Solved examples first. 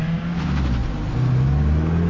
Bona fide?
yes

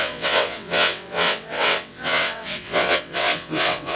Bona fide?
no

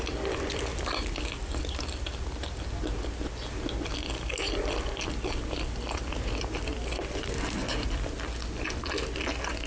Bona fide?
yes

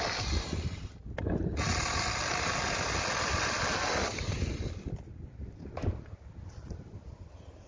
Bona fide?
yes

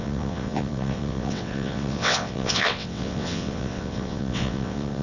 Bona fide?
no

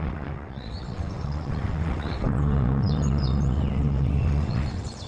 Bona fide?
no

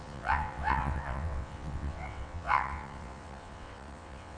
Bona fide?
no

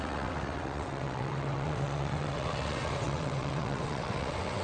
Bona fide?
no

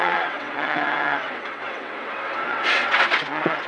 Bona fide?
no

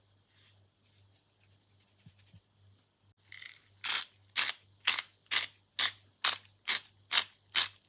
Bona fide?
yes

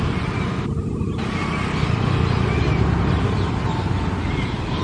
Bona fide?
yes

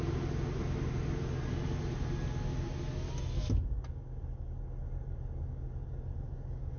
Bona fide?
yes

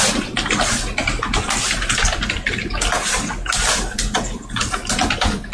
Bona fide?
yes